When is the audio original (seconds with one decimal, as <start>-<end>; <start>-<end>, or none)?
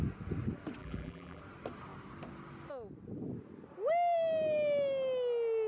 0.0-0.8; 1.4-5.7